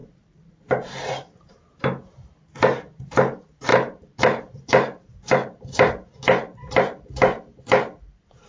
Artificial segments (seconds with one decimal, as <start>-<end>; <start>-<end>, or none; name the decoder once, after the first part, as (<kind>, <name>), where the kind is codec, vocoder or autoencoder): 0.0-2.3 (vocoder, BigVGAN v2); 3.7-7.1